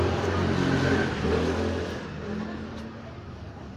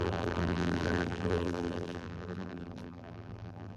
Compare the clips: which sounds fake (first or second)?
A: second